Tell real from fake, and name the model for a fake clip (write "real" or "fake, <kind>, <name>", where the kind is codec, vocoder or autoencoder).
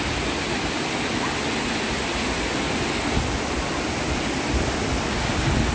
real